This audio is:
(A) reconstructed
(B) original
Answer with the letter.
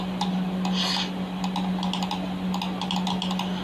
B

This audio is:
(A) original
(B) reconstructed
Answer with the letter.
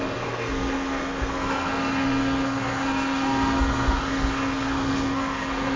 B